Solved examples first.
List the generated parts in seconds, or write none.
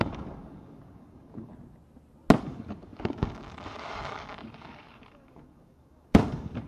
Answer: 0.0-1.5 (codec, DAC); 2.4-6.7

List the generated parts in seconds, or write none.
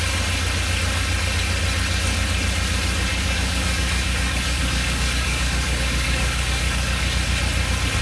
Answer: 3.1-7.0 (codec, DAC)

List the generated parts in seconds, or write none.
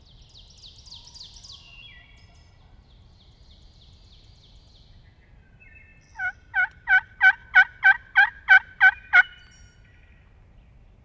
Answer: none